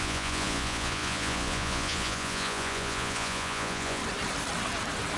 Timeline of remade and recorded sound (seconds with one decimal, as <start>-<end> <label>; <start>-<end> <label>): 0.0-4.0 remade; 4.0-5.2 recorded

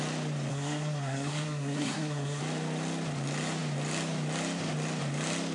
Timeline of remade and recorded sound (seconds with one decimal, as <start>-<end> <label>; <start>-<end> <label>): 0.0-0.5 recorded; 0.5-2.4 remade; 2.4-5.5 recorded

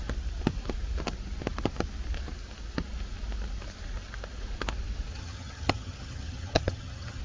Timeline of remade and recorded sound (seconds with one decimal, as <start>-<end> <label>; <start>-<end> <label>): 0.0-5.1 recorded; 5.1-7.2 remade

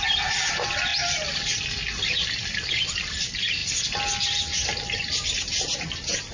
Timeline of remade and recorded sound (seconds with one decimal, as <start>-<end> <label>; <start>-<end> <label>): 0.0-6.3 recorded

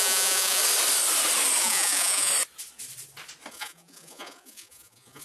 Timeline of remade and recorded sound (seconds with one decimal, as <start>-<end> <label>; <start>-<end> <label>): 0.0-0.6 remade; 0.6-1.6 recorded; 1.6-2.3 remade; 2.3-3.5 recorded; 3.5-5.2 remade